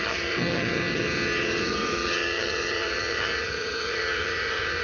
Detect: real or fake fake